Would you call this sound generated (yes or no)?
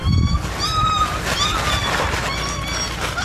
no